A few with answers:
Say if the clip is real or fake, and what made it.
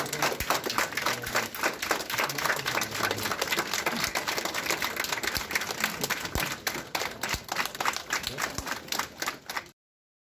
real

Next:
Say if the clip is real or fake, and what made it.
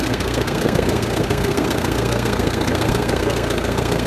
fake, codec, SNAC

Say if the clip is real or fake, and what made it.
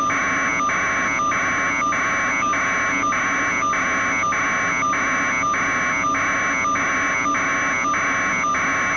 real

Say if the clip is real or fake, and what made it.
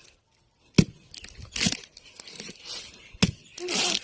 real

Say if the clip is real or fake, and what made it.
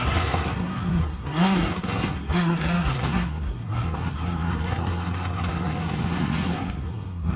fake, codec, SNAC